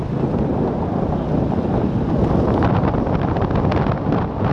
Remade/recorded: recorded